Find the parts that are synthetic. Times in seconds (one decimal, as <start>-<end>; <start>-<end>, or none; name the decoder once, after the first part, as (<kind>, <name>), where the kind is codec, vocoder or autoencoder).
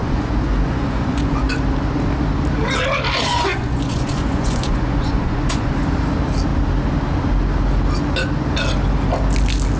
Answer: 0.0-1.5 (vocoder, Vocos); 3.3-5.7